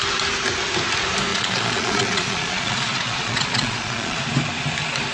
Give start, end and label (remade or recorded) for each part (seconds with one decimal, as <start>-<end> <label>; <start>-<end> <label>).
0.0-1.3 recorded; 1.3-4.2 remade; 4.2-5.1 recorded